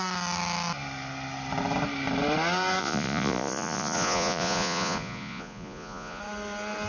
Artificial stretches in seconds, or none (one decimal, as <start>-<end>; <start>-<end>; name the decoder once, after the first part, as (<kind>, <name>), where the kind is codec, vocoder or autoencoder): 2.8-6.2 (vocoder, Vocos)